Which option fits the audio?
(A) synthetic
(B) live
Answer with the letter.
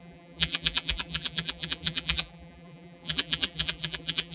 A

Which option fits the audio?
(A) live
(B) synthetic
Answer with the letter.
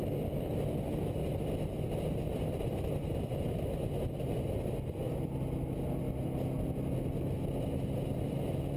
A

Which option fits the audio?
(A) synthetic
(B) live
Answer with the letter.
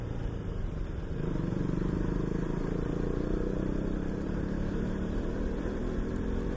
A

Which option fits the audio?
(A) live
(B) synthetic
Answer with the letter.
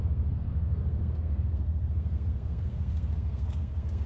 B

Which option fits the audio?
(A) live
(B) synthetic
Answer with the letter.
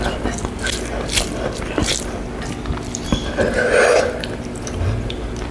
B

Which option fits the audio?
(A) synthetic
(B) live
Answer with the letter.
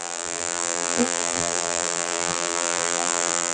A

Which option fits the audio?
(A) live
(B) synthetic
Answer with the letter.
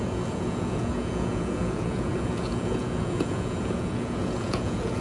B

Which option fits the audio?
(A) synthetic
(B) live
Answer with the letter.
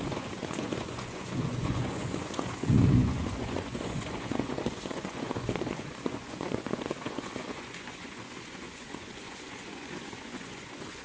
A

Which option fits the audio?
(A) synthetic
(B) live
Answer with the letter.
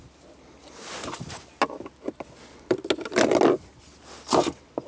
B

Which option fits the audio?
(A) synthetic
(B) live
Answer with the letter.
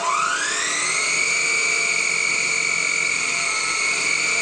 B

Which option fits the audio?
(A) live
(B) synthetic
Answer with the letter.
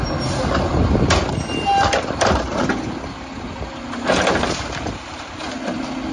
A